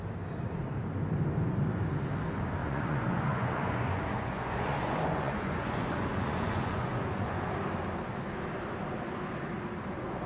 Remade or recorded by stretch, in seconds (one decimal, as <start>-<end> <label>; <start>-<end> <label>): 0.0-2.6 recorded; 2.6-7.5 remade; 7.5-10.3 recorded